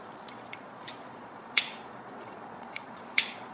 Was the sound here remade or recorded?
remade